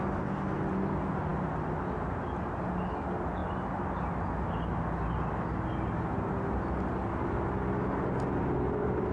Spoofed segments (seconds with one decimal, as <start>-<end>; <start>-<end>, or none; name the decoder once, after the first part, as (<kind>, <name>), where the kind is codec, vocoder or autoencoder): none